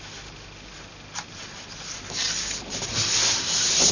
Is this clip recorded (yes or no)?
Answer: yes